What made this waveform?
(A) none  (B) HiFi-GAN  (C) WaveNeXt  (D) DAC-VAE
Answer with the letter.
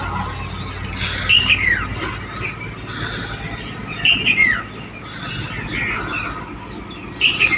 A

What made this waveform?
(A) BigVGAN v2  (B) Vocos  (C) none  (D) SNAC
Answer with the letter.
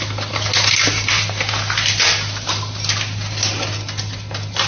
C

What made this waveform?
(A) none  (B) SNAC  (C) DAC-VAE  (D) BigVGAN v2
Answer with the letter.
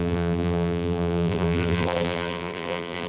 D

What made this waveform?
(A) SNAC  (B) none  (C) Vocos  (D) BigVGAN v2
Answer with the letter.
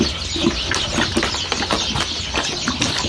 B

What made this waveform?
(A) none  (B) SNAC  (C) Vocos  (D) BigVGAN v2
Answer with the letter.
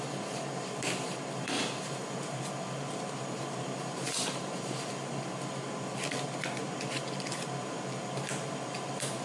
D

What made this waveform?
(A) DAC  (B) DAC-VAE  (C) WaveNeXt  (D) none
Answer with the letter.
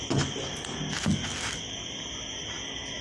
D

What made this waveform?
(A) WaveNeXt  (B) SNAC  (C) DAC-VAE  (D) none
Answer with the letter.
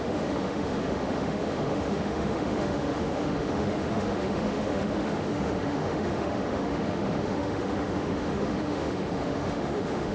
C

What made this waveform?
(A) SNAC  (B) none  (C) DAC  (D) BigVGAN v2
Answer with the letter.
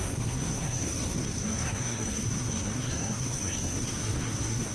A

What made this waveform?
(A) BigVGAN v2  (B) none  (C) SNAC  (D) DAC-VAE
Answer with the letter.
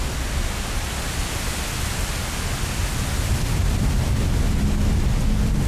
B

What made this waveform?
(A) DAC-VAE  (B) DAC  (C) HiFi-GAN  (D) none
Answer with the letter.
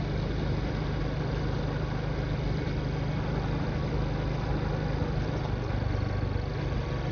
D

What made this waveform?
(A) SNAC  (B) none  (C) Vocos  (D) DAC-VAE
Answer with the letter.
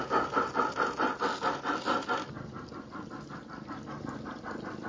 B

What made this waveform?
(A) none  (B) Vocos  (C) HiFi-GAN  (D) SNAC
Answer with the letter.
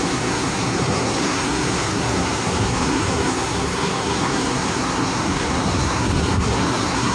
D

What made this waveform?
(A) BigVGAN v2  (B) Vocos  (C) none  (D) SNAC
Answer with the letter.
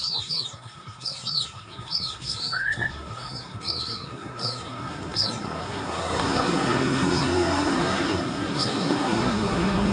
D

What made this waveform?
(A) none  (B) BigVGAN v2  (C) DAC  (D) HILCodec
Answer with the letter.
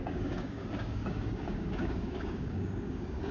C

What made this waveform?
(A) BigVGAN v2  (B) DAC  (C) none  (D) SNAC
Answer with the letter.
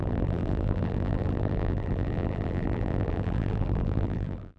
A